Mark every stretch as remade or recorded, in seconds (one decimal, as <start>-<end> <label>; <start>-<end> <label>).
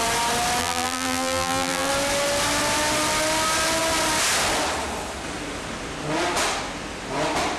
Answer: 0.0-0.6 recorded; 0.6-1.9 remade; 1.9-7.6 recorded